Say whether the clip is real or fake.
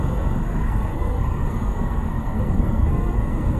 fake